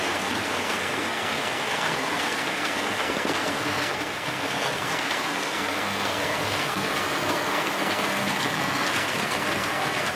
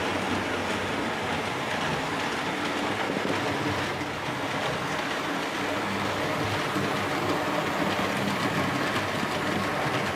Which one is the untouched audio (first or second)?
second